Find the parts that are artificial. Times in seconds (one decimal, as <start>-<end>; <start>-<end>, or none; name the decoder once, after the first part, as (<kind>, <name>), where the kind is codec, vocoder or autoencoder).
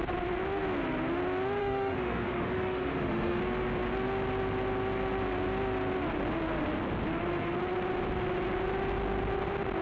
1.6-3.4 (autoencoder, DAC-VAE)